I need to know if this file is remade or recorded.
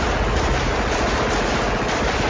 recorded